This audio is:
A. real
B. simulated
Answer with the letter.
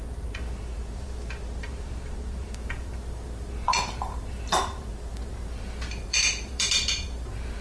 B